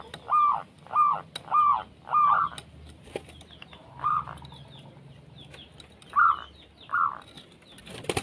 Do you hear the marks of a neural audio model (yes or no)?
no